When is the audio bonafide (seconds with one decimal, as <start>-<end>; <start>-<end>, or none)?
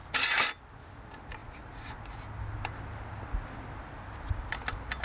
0.0-5.0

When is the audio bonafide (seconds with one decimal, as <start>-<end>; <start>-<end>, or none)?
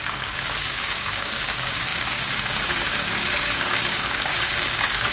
none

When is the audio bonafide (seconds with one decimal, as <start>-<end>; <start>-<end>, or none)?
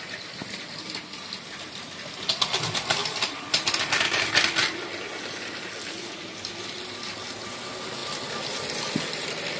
0.0-9.6